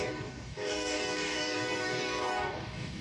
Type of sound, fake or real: fake